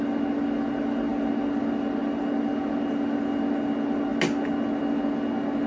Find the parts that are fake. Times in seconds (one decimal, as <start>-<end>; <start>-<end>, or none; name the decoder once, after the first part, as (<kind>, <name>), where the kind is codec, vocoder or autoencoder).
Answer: none

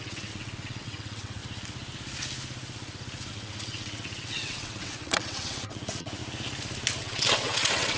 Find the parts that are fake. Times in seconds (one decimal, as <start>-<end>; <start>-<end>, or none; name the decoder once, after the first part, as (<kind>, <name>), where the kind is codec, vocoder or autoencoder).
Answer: 0.0-1.4 (vocoder, WaveNeXt); 3.3-6.2; 7.0-8.0

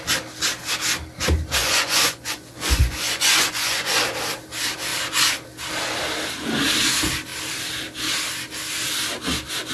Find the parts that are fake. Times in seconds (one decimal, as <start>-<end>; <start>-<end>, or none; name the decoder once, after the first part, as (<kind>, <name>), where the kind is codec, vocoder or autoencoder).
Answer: 1.6-4.0 (vocoder, Vocos)

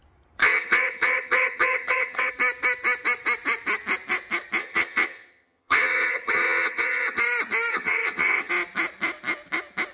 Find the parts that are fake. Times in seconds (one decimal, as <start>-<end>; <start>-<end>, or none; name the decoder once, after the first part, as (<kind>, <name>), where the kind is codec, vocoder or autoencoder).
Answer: 0.4-2.3 (vocoder, HiFi-GAN); 4.6-7.2; 7.7-8.5

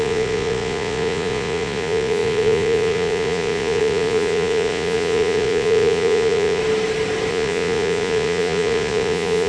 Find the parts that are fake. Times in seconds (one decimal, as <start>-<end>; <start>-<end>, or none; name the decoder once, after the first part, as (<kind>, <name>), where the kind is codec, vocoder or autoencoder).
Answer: 0.0-6.6 (vocoder, Vocos); 7.3-9.5

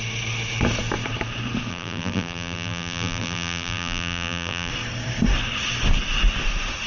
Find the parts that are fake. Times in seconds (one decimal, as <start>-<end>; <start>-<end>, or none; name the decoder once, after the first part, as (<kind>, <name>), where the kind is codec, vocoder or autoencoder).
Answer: 1.7-4.7 (vocoder, BigVGAN v2)

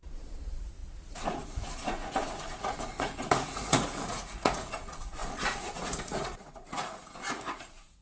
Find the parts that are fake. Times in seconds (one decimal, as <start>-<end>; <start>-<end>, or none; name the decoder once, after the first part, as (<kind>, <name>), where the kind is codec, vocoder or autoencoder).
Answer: 0.0-8.0 (vocoder, Vocos)